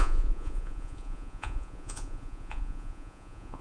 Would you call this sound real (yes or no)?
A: no